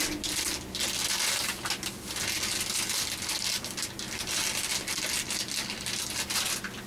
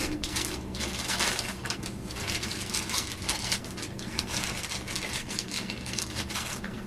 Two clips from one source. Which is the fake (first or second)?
second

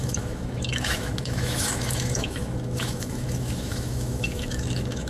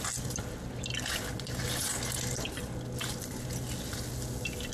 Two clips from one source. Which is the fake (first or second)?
first